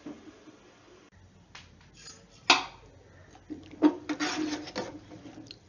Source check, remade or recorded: recorded